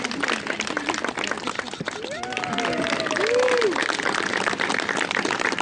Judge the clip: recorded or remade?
recorded